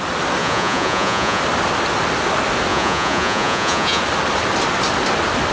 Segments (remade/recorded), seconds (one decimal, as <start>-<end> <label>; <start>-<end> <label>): 0.0-0.4 recorded; 0.4-1.4 remade; 1.4-2.7 recorded; 2.7-4.0 remade; 4.0-5.5 recorded